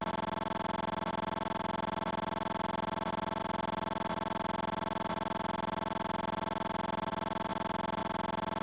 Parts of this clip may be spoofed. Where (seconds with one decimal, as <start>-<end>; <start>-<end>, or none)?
none